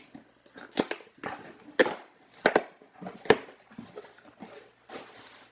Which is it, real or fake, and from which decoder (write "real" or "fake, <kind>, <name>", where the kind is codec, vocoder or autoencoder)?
real